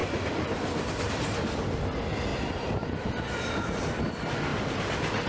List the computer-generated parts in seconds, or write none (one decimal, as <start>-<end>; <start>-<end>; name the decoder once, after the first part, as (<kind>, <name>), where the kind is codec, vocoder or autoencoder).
0.0-1.0 (vocoder, BigVGAN v2); 2.3-4.1; 4.5-5.3